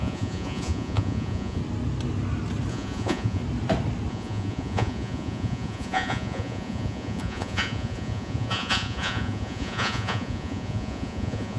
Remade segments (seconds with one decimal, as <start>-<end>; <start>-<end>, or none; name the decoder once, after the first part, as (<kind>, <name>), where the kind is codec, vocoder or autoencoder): 0.0-1.6 (vocoder, Vocos); 2.7-3.4; 4.1-11.6